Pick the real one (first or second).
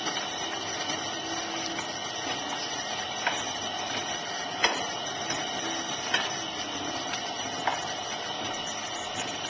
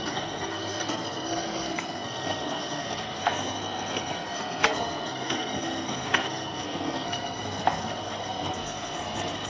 first